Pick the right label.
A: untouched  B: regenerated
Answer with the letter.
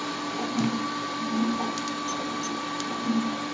A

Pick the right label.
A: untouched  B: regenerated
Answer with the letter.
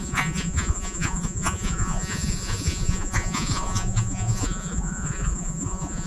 B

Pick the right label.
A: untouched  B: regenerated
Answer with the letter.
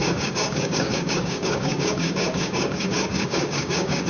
B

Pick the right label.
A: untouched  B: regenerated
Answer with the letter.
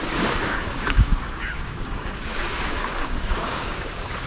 B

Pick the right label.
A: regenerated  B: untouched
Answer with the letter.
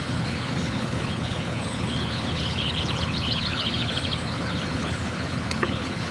A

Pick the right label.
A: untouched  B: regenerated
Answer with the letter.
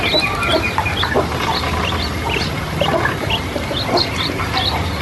B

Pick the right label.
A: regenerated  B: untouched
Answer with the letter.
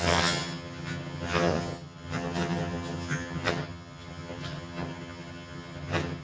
A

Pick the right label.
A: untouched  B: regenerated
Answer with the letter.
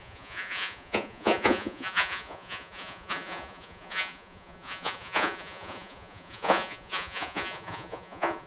B